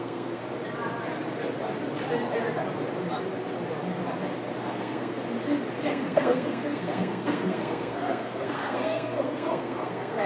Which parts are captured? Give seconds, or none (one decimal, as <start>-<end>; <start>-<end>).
0.4-4.6; 5.2-5.9